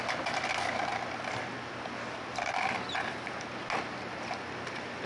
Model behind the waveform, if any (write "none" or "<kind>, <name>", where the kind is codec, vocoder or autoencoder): none